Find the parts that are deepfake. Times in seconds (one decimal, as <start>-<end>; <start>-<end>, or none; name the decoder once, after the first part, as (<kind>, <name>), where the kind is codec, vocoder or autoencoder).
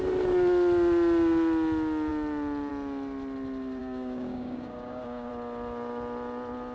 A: 3.8-5.3 (codec, DAC)